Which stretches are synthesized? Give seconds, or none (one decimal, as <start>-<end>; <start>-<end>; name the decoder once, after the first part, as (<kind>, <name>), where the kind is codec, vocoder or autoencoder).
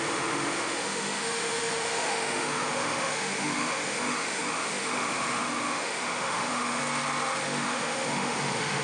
0.0-6.8 (autoencoder, DAC-VAE); 7.6-8.8